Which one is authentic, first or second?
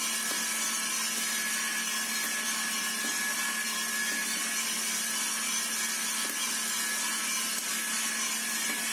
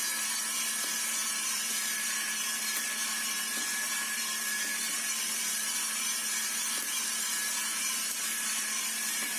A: first